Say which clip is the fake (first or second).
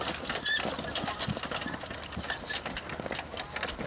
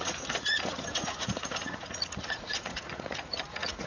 second